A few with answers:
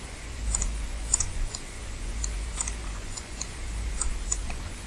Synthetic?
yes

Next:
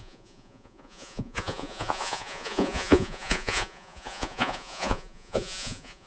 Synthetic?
yes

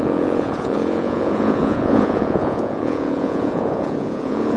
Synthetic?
yes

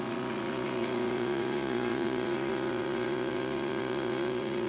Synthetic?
yes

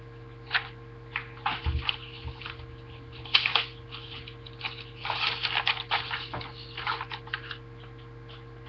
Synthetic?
no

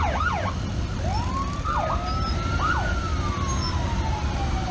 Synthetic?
no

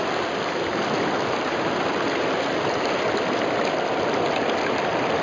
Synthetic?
no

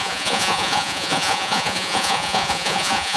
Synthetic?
yes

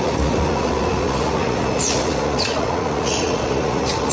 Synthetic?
yes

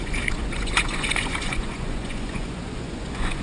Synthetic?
yes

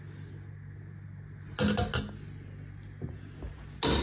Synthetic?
no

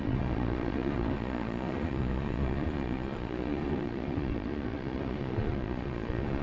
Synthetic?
yes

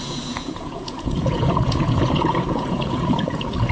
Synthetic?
yes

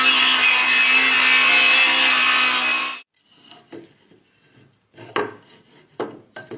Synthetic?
no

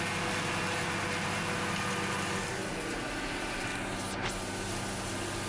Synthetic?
no